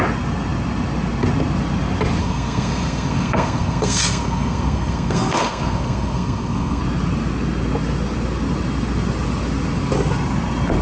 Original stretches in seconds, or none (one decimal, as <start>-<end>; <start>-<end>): 0.0-2.2; 6.8-10.8